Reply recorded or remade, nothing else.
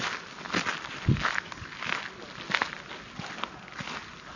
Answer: recorded